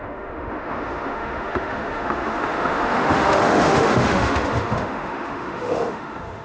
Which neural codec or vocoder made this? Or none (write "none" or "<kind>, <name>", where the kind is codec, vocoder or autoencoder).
autoencoder, DAC-VAE